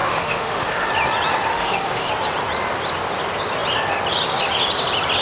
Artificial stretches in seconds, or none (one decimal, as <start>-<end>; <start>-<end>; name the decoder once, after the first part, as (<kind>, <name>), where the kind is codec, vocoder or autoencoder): 0.0-0.9 (autoencoder, DAC-VAE); 1.5-2.1